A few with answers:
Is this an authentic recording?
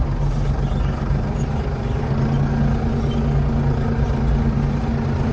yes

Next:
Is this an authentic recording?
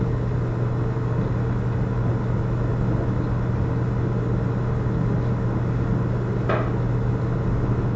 yes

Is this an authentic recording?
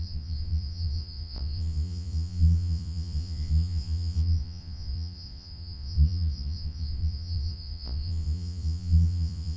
no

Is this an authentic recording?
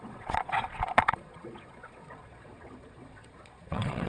no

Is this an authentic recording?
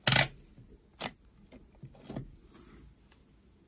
yes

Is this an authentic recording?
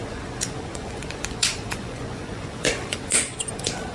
no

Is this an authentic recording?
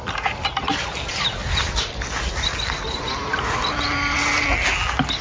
yes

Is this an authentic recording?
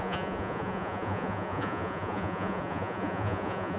no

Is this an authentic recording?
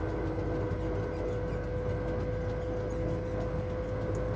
yes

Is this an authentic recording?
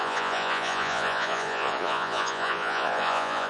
no